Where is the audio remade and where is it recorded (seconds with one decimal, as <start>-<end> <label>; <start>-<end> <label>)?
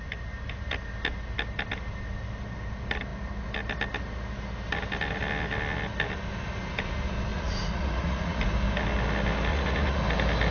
0.0-7.3 recorded; 7.3-8.4 remade; 8.4-9.5 recorded; 9.5-10.0 remade; 10.0-10.5 recorded